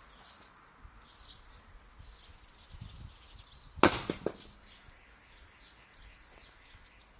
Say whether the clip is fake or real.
real